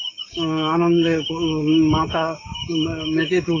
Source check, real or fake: fake